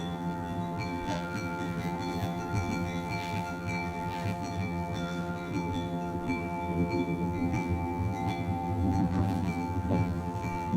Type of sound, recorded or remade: remade